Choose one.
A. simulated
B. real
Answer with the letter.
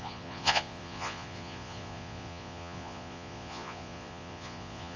A